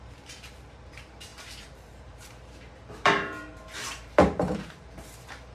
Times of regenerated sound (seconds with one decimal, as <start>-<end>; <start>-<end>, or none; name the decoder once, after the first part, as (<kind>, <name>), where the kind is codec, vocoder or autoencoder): 0.0-5.5 (vocoder, BigVGAN v2)